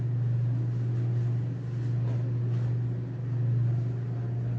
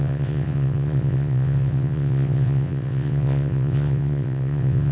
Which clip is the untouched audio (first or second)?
first